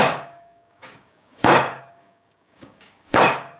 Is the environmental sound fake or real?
fake